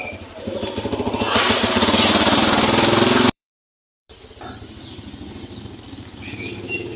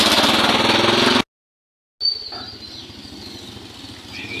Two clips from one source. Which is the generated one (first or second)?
first